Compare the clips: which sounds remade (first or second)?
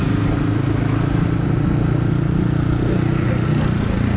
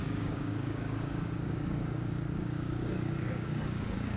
second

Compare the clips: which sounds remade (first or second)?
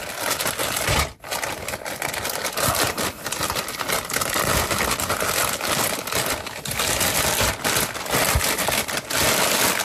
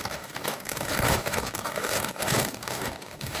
second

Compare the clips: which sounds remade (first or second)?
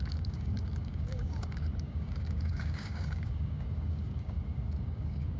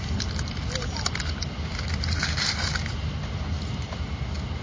first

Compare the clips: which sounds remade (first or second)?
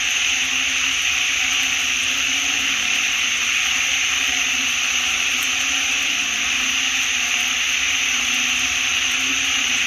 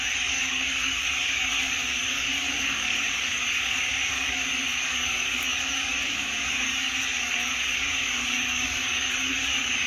second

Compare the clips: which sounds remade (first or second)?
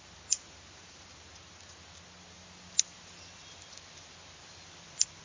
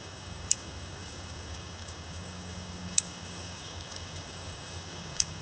second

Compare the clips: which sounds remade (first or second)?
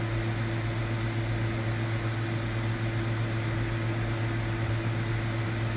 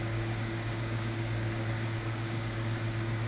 second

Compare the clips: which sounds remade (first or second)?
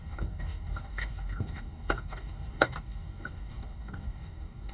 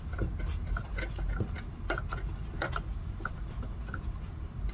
first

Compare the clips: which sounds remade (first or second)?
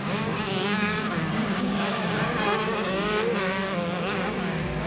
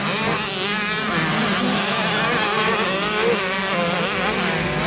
first